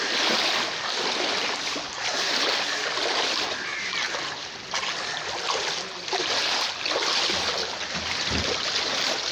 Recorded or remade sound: recorded